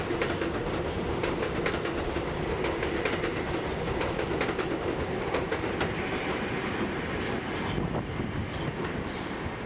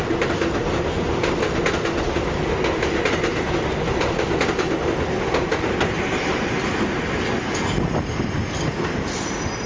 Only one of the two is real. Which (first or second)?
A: second